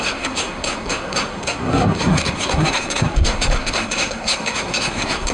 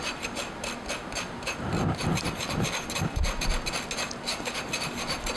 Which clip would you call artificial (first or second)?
first